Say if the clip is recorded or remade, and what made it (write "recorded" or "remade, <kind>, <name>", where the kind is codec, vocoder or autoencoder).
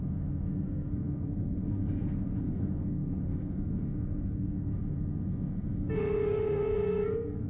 remade, codec, SNAC